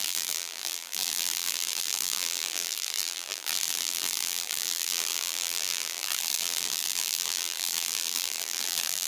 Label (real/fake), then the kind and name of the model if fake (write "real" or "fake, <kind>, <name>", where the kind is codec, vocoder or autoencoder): fake, vocoder, BigVGAN v2